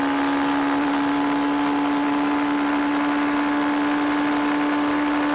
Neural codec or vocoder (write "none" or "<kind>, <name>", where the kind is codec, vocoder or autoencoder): none